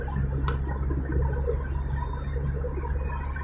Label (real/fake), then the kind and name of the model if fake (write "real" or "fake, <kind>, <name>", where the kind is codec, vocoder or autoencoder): real